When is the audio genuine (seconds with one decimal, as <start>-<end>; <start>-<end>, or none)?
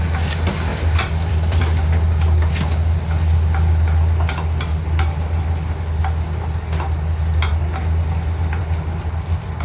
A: 0.0-0.7; 1.6-9.6